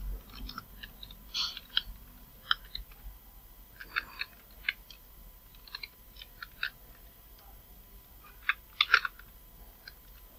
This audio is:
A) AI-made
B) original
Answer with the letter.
B